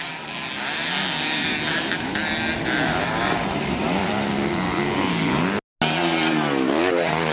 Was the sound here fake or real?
real